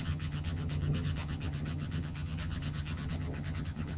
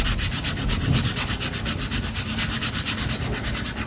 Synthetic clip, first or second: first